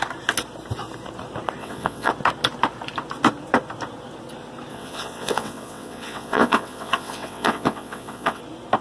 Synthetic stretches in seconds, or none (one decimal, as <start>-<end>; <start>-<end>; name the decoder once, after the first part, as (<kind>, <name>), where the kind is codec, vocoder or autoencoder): 1.6-2.1 (vocoder, WaveNeXt); 4.7-8.4